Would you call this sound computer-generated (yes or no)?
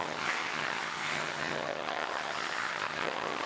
yes